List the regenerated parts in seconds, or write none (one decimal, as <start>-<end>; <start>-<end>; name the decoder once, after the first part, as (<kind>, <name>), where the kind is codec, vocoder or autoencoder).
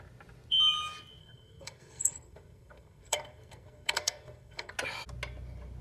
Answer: 1.2-4.7 (codec, SNAC)